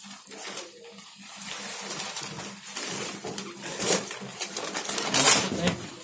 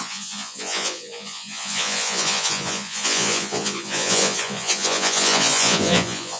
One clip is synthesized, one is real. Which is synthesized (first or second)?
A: second